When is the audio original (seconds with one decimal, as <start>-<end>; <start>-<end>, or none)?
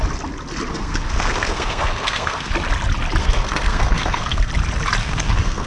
0.0-0.7; 2.5-3.2; 4.5-5.0